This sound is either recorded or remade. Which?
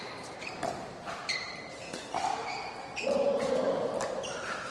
remade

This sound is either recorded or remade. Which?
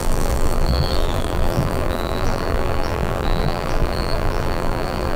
remade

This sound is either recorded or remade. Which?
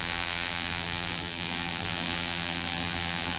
remade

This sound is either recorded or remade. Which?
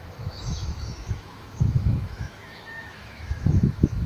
remade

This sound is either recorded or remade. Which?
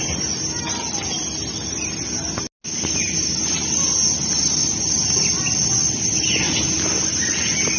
recorded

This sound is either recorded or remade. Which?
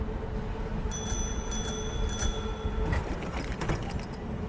recorded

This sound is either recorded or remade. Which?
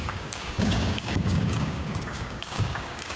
remade